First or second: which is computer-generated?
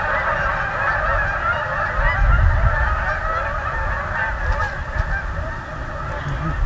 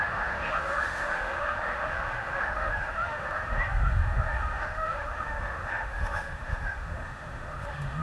second